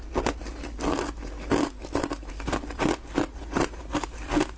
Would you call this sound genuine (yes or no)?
yes